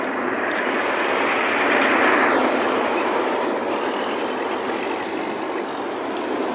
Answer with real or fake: real